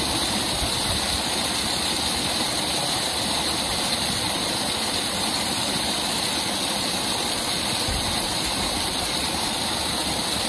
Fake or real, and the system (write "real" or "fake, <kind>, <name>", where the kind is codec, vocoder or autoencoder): fake, vocoder, BigVGAN v2